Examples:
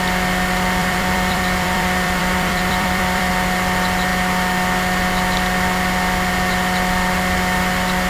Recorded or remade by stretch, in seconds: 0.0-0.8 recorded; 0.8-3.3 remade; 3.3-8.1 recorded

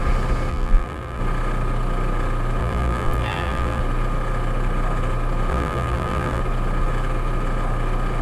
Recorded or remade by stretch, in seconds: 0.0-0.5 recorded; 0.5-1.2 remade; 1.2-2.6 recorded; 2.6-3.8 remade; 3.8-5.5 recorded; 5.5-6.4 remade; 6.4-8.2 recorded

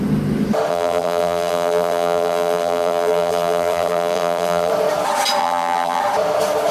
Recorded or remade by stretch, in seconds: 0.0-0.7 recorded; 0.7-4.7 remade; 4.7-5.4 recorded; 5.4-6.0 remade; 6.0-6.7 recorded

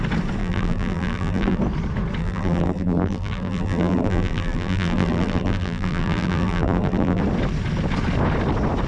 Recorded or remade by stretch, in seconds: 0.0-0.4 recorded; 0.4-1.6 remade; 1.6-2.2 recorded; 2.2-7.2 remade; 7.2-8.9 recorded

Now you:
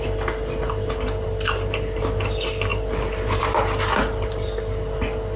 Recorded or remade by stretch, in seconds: 0.0-5.4 recorded